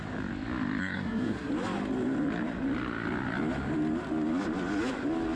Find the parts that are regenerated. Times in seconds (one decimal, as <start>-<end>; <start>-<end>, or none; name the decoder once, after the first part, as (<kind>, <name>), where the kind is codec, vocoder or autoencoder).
0.8-1.5 (codec, SNAC)